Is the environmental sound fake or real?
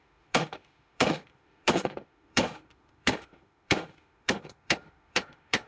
fake